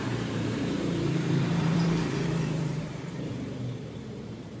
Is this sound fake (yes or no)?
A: yes